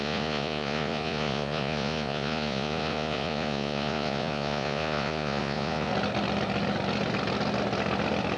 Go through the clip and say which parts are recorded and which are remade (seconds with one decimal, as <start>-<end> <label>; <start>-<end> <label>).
0.0-5.9 remade; 5.9-8.4 recorded